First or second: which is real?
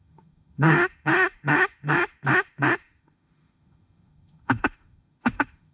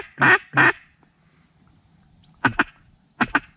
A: second